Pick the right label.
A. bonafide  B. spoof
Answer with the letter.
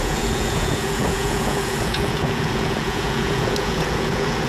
B